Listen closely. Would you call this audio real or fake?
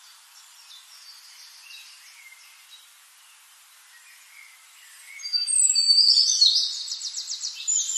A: real